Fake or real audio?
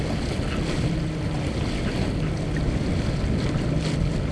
real